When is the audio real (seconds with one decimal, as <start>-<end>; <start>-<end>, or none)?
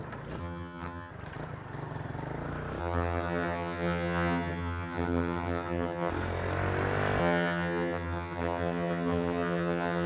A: 0.0-0.4; 1.1-2.8; 6.1-7.2